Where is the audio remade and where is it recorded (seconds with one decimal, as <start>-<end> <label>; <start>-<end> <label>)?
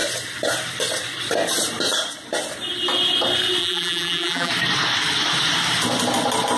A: 0.0-3.6 recorded; 3.6-4.5 remade; 4.5-6.6 recorded